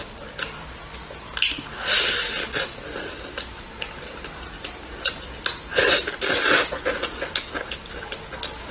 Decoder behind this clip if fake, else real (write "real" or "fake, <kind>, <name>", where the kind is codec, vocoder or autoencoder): real